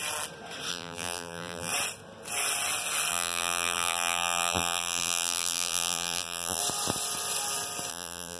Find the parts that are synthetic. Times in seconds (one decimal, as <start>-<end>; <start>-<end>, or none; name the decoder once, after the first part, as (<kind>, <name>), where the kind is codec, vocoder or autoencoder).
0.7-1.7 (vocoder, BigVGAN v2); 3.1-6.6; 7.9-8.4